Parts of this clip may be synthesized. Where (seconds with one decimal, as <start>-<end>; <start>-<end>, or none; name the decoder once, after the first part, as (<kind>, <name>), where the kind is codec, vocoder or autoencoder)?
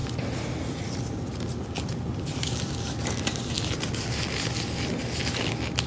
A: none